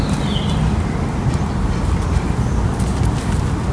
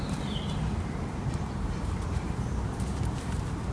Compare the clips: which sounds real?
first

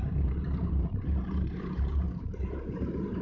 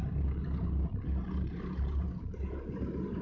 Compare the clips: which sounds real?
second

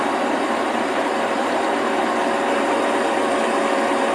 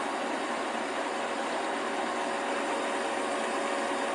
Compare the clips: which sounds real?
second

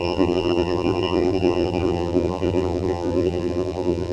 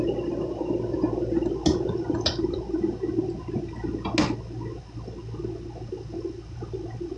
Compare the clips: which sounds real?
second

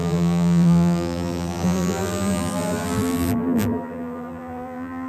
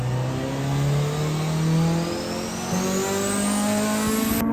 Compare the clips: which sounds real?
second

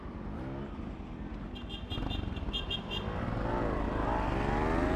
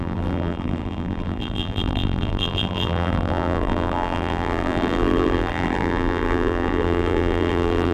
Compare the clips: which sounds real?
first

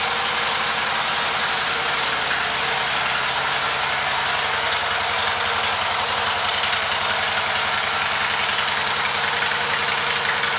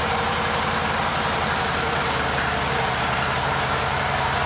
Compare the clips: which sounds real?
first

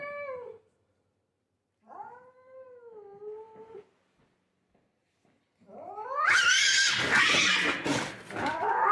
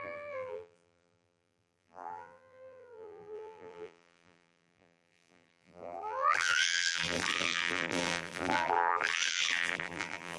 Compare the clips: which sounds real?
first